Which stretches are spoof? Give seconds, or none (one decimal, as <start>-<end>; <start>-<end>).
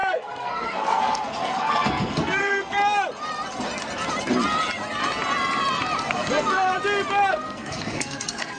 0.0-2.8; 6.1-6.7; 7.3-8.6